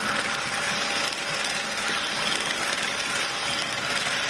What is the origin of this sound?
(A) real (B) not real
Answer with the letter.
A